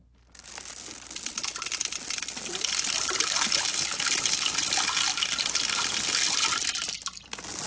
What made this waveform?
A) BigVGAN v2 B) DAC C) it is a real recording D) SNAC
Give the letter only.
C